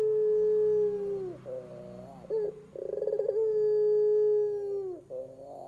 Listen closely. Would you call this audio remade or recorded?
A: recorded